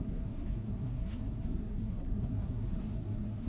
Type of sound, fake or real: fake